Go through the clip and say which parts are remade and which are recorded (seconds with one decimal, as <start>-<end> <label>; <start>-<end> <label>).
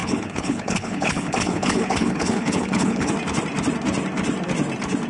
0.0-3.1 remade; 3.1-5.1 recorded